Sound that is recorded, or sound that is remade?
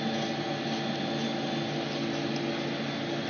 recorded